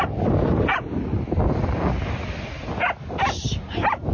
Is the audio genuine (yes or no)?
yes